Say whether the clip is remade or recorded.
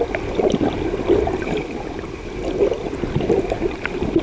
recorded